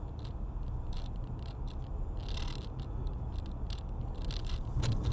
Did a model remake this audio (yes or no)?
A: no